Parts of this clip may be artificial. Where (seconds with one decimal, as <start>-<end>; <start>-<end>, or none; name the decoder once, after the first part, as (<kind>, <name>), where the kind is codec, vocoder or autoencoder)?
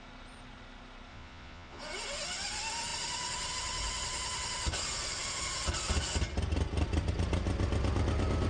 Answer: 1.1-1.8 (vocoder, Vocos)